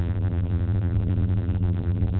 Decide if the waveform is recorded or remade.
remade